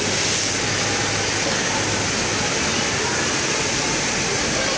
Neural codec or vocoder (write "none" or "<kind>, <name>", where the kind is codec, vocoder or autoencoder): none